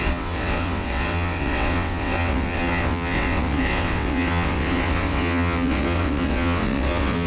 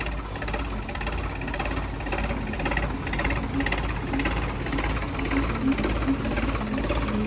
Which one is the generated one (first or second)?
first